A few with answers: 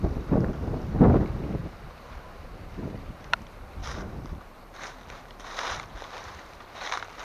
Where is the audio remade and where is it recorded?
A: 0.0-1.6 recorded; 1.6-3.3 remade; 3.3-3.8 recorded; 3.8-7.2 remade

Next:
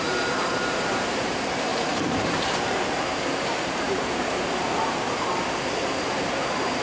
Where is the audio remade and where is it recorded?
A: 0.0-6.8 remade

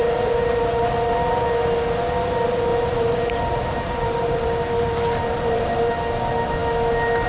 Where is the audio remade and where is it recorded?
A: 0.0-1.3 remade; 1.3-2.7 recorded; 2.7-5.9 remade; 5.9-7.3 recorded

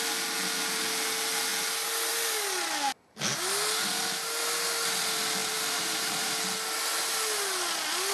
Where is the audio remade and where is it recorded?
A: 0.0-5.4 recorded; 5.4-6.4 remade; 6.4-8.1 recorded

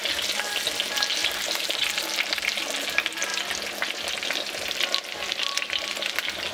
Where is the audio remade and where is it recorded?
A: 0.0-1.2 recorded; 1.2-2.0 remade; 2.0-6.5 recorded